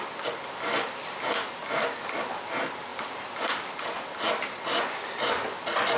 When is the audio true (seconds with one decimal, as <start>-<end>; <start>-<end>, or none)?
0.0-6.0